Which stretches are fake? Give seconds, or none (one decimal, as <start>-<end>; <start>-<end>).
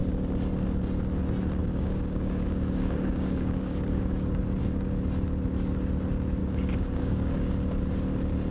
1.6-4.4; 6.4-7.5